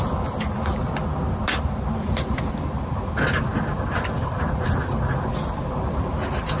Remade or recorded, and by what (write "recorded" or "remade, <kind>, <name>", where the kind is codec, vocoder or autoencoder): recorded